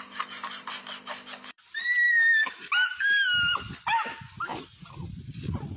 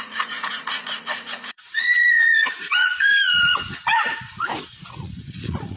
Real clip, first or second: first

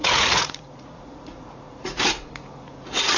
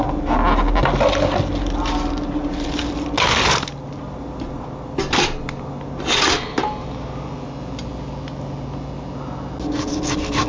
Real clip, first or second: second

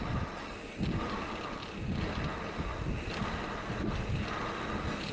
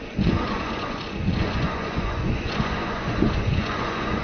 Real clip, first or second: first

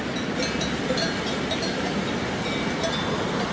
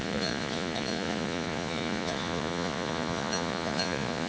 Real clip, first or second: first